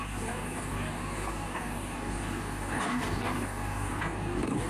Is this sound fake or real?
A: fake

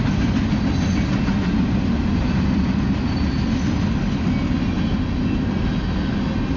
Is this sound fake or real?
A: real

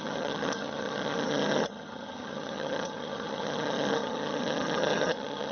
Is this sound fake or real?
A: fake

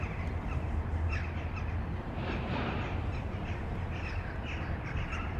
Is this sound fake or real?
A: real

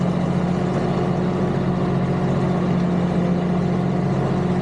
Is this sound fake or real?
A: real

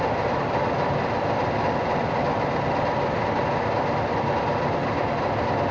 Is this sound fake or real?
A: real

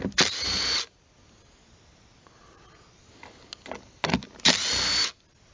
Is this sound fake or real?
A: real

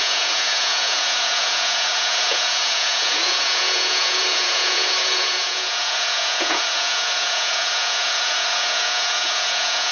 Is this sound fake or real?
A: fake